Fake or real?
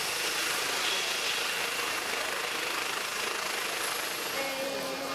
real